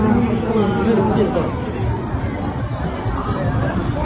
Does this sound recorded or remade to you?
recorded